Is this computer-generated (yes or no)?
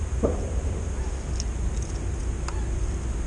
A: no